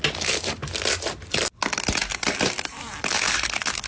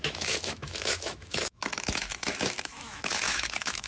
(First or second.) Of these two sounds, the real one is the first